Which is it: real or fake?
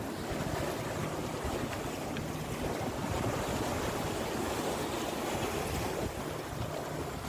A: real